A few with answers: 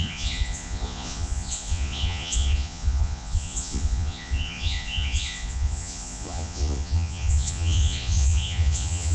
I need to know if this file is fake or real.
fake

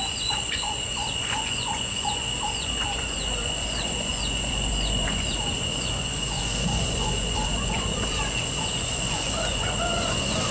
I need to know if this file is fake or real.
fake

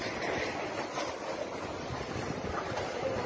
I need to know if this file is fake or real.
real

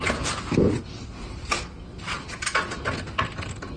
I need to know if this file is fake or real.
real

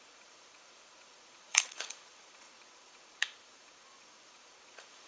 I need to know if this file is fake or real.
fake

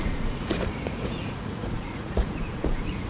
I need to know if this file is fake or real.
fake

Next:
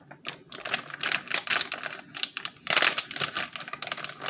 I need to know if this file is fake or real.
real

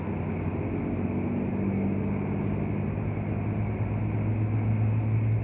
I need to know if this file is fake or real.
real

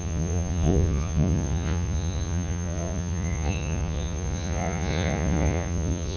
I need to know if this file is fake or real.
fake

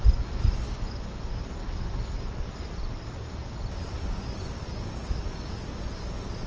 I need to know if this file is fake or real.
real